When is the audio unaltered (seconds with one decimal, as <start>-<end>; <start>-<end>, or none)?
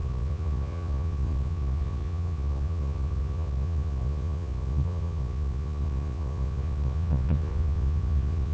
none